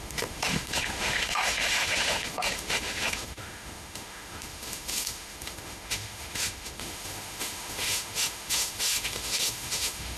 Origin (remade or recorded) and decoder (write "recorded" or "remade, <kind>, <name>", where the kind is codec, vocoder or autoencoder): remade, autoencoder, DAC-VAE